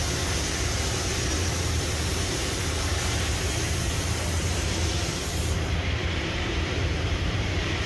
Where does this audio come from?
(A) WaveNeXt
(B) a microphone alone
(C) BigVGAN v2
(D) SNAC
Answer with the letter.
C